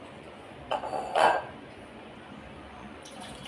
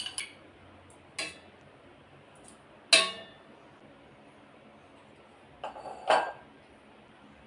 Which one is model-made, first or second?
first